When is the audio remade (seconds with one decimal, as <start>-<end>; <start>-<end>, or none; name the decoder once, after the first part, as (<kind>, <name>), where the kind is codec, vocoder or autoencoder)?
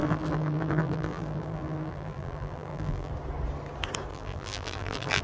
0.0-3.1 (vocoder, BigVGAN v2); 4.1-5.2